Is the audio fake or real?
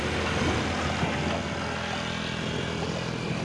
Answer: real